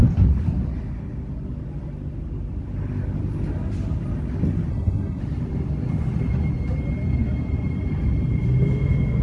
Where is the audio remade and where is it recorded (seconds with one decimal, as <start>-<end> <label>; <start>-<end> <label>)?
0.0-4.7 recorded; 4.7-5.2 remade; 5.2-9.2 recorded